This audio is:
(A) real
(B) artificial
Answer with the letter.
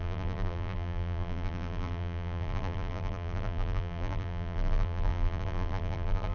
B